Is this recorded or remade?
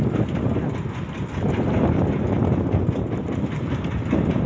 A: recorded